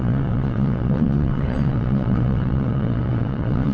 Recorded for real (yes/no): no